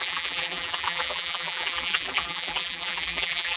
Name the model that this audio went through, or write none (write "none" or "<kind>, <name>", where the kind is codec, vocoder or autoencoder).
vocoder, BigVGAN v2